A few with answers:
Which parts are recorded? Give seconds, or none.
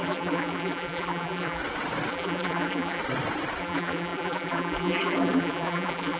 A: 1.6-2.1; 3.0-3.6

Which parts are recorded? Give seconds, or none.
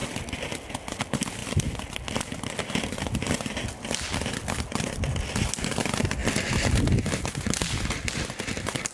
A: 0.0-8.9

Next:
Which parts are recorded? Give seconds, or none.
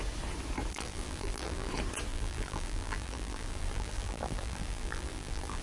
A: 0.0-0.7; 1.7-2.1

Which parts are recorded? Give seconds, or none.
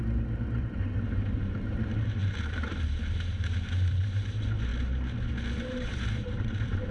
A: 4.7-5.6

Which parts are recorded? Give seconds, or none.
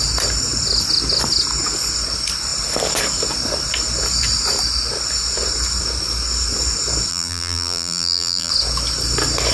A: 0.0-7.1; 8.5-9.5